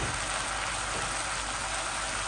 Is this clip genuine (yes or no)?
yes